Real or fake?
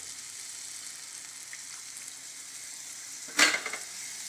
real